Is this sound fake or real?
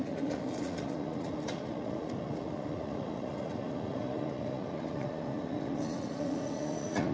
fake